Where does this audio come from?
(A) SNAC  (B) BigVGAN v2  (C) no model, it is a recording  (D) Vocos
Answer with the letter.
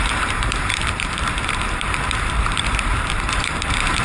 B